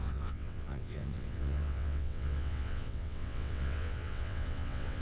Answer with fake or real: fake